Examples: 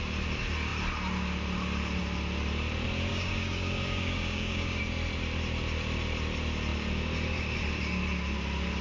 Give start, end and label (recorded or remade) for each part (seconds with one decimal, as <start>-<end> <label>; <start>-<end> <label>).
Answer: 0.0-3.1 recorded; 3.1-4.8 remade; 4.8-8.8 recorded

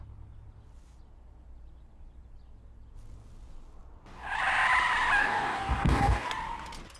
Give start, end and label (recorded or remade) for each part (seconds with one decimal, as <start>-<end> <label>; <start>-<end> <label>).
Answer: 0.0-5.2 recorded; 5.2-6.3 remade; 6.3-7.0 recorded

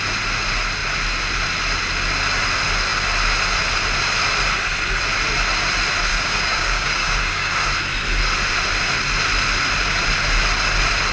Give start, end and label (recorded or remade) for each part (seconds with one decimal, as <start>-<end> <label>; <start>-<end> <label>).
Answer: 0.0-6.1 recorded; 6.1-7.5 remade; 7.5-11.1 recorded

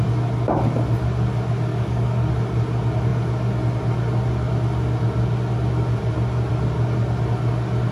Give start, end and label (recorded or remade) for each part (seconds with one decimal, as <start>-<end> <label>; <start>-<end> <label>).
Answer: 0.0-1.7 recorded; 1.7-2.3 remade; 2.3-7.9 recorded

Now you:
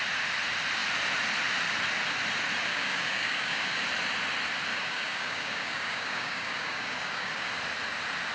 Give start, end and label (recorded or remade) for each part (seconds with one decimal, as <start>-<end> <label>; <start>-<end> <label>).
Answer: 0.0-2.7 recorded; 2.7-3.8 remade; 3.8-4.7 recorded; 4.7-7.5 remade; 7.5-8.3 recorded

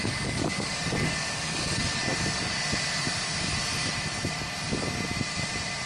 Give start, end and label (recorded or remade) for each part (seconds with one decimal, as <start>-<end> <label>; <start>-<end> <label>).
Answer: 0.0-2.1 remade; 2.1-5.9 recorded